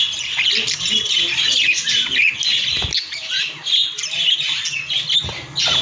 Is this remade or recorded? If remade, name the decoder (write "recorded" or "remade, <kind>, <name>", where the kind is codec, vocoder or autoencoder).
recorded